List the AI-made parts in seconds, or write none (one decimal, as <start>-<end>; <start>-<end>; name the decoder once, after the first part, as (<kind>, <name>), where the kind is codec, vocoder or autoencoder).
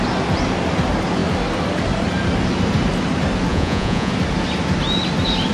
3.5-4.1 (vocoder, Vocos)